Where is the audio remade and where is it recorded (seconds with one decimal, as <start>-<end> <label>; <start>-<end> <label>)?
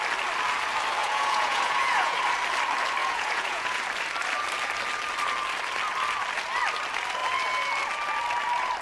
0.0-1.0 recorded; 1.0-2.2 remade; 2.2-3.0 recorded; 3.0-3.8 remade; 3.8-8.8 recorded